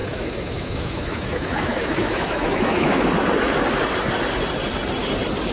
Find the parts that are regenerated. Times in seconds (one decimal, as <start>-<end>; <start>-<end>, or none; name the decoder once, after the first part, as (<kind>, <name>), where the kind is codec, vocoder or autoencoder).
0.0-3.1 (autoencoder, DAC-VAE)